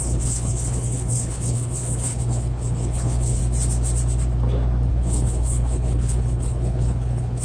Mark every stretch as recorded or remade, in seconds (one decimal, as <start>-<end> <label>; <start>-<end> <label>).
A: 0.0-3.4 remade; 3.4-4.9 recorded; 4.9-7.4 remade